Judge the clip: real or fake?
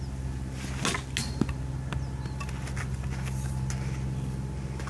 real